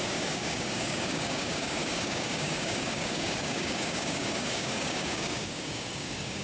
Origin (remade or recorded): remade